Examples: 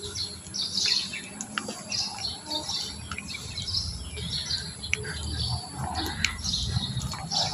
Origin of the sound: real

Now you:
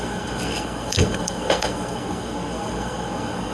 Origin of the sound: fake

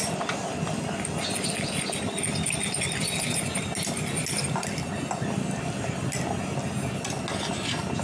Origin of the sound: real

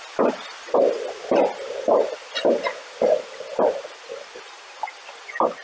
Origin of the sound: real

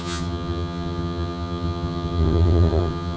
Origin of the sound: fake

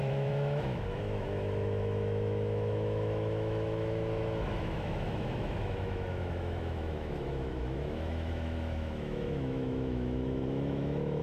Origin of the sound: fake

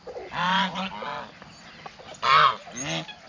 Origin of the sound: real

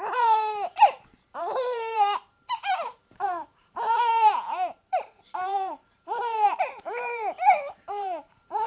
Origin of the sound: fake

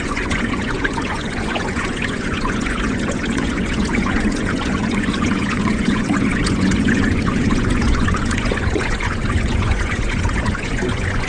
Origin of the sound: fake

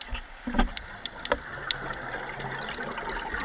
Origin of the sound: real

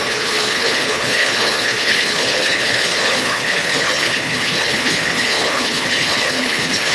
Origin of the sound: fake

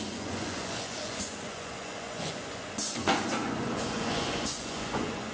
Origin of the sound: fake